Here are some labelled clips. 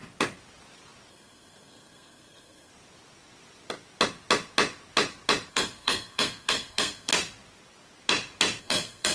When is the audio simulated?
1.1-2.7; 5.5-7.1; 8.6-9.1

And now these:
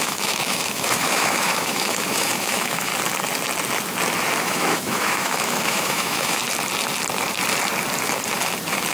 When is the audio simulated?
0.0-2.9; 4.4-6.4

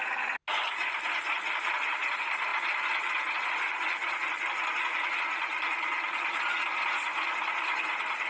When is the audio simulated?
none

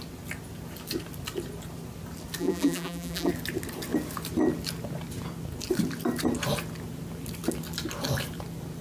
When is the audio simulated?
2.4-3.3

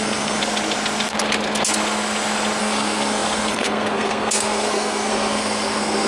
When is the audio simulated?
0.0-0.4; 2.6-6.1

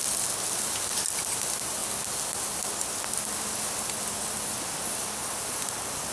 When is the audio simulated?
none

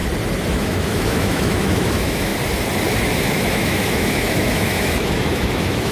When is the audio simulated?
0.5-2.3; 3.3-5.9